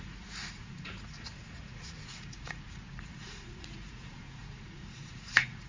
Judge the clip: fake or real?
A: fake